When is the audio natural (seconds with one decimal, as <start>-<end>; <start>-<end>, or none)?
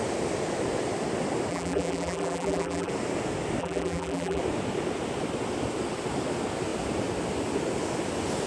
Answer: 0.0-1.5; 2.9-3.6; 4.4-8.5